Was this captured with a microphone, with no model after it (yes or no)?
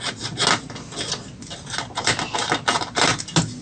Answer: yes